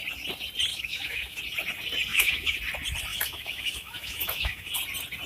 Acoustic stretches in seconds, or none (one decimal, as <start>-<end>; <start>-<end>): 0.0-0.7; 1.4-2.1; 2.6-3.1; 4.7-5.3